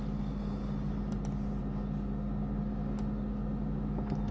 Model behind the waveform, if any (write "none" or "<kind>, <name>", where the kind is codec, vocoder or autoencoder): none